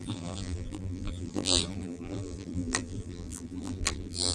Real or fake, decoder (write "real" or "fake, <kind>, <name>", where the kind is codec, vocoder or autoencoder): fake, vocoder, BigVGAN v2